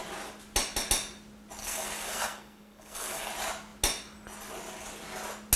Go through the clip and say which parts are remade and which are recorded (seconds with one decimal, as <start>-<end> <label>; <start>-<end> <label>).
0.0-1.6 recorded; 1.6-3.3 remade; 3.3-5.6 recorded